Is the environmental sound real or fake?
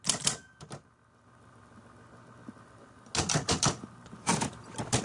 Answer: real